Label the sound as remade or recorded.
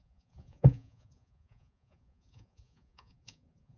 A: remade